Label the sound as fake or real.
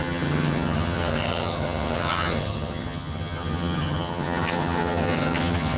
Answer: fake